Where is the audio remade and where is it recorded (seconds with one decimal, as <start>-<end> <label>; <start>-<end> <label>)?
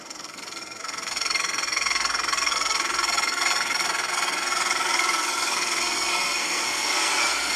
0.0-7.6 remade